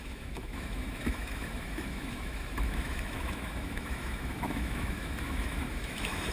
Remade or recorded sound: remade